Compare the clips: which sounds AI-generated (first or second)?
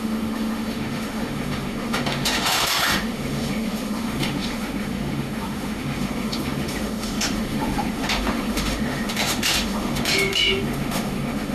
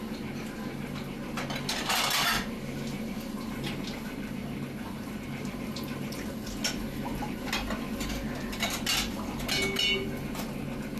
first